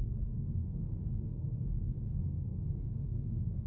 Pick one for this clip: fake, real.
fake